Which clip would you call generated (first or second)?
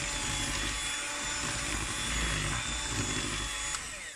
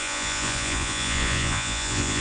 second